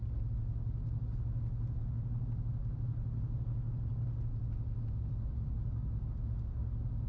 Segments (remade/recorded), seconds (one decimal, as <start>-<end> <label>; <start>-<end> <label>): 0.0-7.1 recorded